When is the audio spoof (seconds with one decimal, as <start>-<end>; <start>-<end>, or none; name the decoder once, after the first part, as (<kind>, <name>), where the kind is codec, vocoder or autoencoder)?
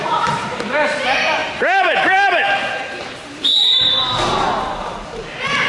0.0-5.7 (vocoder, BigVGAN v2)